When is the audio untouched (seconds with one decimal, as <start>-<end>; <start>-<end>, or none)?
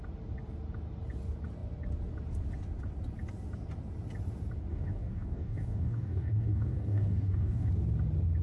0.0-4.7; 7.7-8.4